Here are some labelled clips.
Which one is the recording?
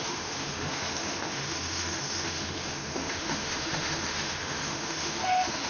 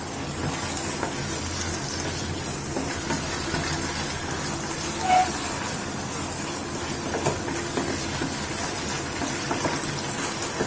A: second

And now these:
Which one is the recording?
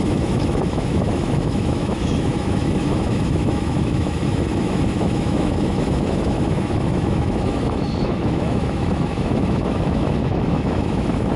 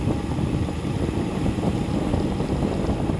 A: second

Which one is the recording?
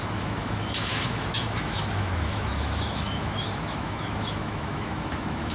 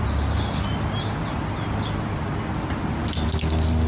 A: second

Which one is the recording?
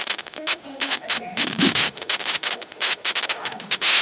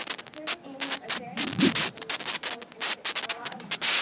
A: second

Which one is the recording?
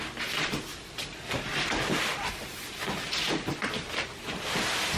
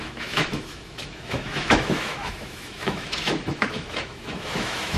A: first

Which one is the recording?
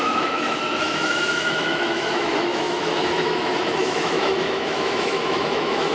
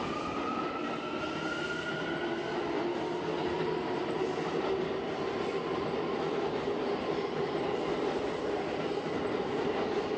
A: second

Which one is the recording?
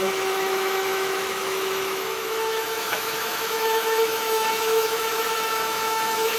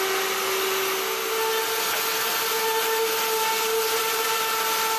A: second